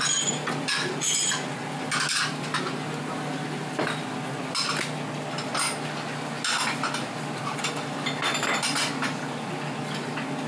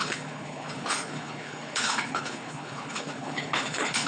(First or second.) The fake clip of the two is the second